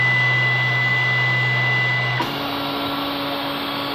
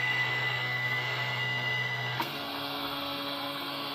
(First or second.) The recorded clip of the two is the first